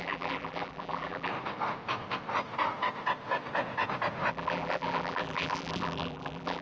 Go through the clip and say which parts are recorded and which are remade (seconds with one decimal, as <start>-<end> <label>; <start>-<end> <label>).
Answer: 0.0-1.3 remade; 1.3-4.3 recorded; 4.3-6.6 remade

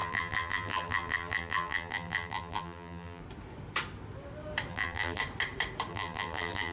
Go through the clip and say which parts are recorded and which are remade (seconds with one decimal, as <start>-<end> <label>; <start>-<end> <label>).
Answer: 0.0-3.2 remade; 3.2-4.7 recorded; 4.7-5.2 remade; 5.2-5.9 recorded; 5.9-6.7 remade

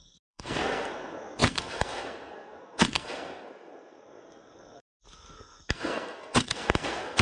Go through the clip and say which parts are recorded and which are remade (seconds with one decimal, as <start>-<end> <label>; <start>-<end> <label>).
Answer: 0.0-7.2 remade

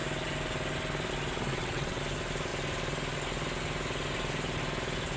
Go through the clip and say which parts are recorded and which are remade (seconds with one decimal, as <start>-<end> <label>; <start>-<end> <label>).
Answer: 0.0-1.5 recorded; 1.5-2.0 remade; 2.0-5.2 recorded

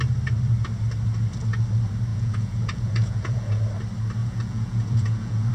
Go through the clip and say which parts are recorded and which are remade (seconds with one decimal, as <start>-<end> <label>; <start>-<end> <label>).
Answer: 0.0-2.1 recorded; 2.1-3.6 remade; 3.6-4.2 recorded; 4.2-5.5 remade

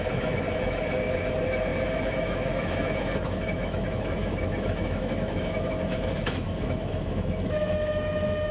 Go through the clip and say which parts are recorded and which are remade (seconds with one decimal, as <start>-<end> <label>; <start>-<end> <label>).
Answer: 0.0-8.5 remade

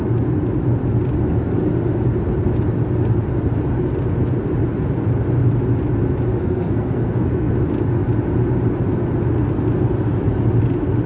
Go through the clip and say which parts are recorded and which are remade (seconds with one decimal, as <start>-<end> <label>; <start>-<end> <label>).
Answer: 0.0-6.3 recorded; 6.3-7.5 remade; 7.5-11.1 recorded

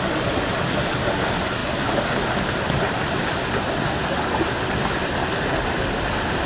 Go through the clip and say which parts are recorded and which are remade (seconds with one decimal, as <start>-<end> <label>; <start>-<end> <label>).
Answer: 0.0-6.5 recorded